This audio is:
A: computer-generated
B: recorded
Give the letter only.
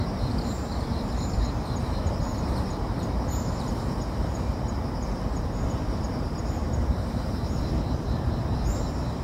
A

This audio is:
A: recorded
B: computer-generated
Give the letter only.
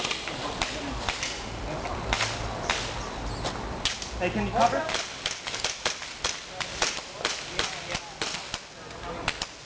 A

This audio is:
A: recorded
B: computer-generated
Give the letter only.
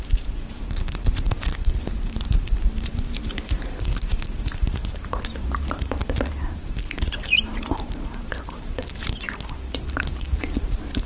B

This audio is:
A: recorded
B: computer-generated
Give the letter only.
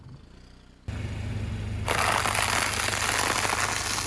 A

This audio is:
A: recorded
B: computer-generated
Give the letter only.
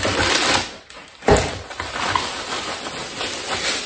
A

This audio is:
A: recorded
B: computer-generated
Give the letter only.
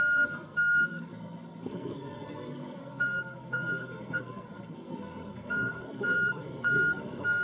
B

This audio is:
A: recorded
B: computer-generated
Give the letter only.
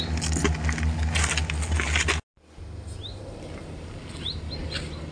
A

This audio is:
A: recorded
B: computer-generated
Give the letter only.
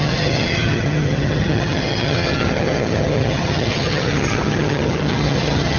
B